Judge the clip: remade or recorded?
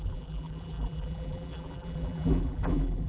remade